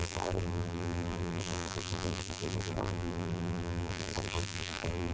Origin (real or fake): fake